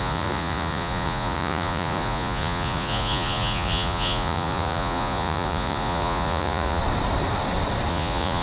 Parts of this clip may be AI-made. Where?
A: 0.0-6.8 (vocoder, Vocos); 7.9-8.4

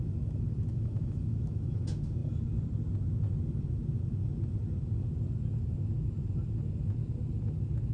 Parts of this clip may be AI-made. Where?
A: 0.7-1.8 (autoencoder, DAC-VAE)

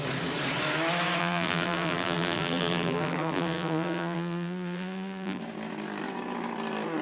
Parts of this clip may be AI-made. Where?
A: 1.2-5.4 (vocoder, BigVGAN v2)

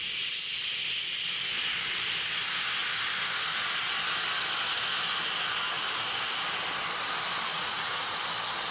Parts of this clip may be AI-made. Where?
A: 7.5-8.2 (vocoder, Vocos)

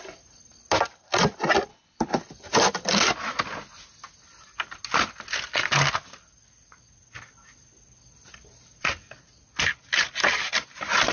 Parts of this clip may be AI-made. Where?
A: 1.7-2.2 (codec, HILCodec)